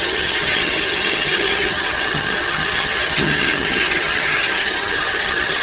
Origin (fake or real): fake